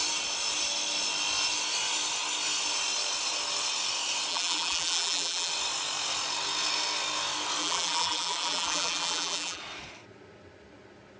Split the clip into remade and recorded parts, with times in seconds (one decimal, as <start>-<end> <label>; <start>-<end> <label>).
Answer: 0.0-4.3 recorded; 4.3-5.5 remade; 5.5-7.6 recorded; 7.6-9.6 remade; 9.6-11.2 recorded